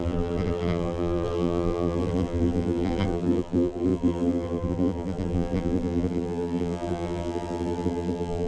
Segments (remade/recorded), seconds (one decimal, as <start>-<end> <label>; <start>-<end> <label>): 0.0-8.5 remade